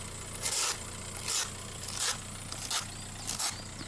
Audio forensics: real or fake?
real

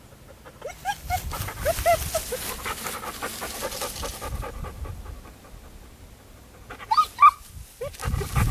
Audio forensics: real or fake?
real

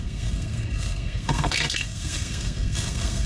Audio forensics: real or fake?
fake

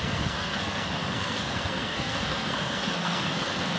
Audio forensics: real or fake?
fake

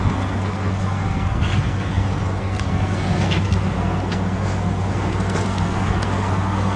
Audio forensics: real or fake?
fake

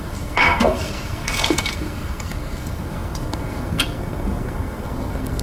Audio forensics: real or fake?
fake